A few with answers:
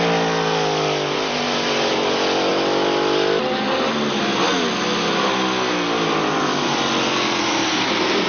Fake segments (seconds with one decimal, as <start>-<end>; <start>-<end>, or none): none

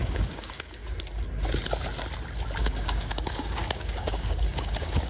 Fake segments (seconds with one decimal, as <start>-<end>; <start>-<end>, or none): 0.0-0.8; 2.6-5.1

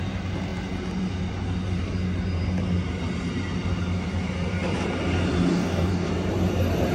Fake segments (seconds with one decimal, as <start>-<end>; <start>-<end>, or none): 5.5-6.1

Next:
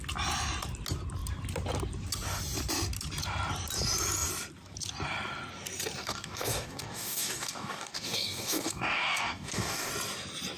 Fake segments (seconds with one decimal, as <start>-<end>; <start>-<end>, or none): 6.0-9.9

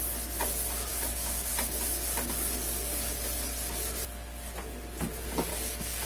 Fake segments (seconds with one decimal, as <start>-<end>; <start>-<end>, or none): 0.9-1.5; 5.5-6.1

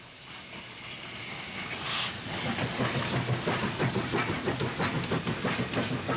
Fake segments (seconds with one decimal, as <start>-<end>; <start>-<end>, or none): 1.3-1.8